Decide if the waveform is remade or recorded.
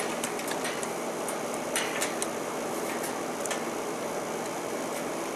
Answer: recorded